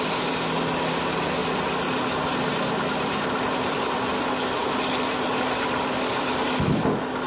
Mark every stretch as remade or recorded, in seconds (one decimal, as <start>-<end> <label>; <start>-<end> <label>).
0.0-7.3 recorded